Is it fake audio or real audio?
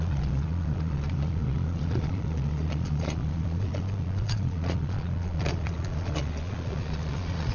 fake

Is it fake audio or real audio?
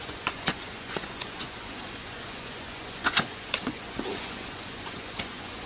fake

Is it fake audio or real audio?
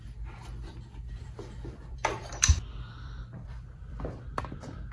fake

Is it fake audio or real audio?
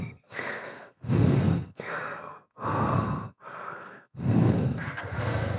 fake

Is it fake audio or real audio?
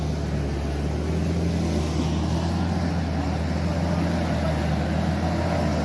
real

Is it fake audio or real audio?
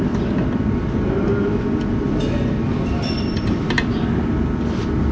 real